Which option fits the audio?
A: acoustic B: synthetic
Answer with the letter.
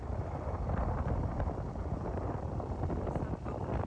A